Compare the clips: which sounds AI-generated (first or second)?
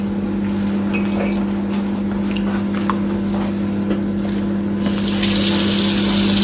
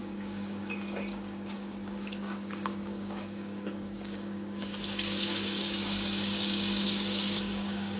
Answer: second